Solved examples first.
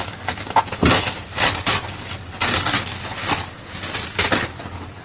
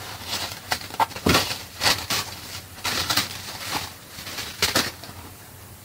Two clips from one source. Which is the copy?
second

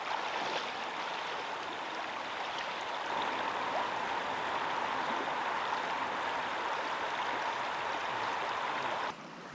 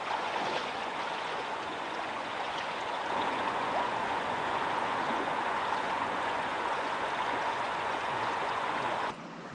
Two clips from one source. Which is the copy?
second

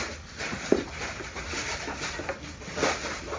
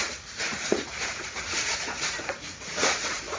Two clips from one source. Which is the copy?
second